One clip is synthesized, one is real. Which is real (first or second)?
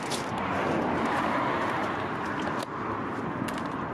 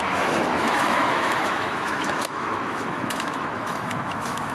first